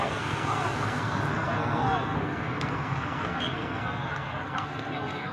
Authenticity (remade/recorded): remade